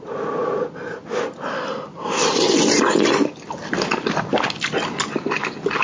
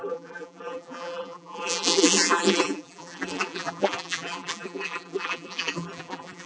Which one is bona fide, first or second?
first